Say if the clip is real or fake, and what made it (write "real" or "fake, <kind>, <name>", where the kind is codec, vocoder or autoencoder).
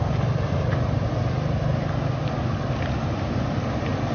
real